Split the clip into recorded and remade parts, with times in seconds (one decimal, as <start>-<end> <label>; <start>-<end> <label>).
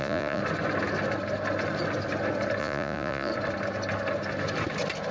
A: 0.0-0.4 remade; 0.4-2.6 recorded; 2.6-3.3 remade; 3.3-5.1 recorded